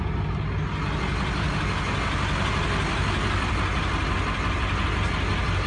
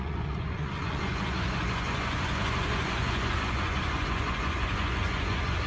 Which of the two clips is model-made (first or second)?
second